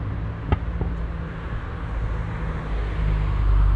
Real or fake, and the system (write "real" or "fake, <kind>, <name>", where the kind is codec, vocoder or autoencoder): real